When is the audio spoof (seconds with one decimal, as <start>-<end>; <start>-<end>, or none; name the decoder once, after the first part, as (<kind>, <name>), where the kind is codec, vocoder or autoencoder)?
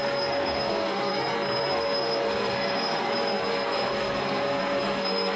0.0-5.4 (codec, SNAC)